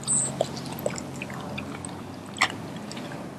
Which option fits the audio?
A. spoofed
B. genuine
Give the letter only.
B